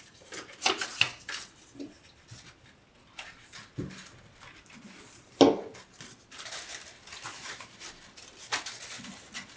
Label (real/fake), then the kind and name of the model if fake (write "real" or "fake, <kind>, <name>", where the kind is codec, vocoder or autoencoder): real